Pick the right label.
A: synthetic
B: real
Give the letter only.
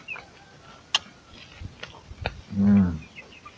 B